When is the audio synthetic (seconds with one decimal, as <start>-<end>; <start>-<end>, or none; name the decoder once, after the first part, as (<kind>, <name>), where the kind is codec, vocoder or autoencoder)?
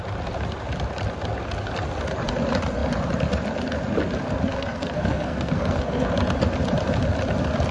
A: 4.5-6.1 (codec, SNAC)